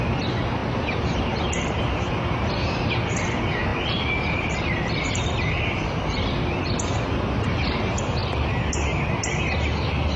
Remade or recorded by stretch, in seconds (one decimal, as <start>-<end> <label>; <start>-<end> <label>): 0.0-3.7 recorded; 3.7-6.6 remade; 6.6-8.2 recorded; 8.2-8.7 remade; 8.7-10.2 recorded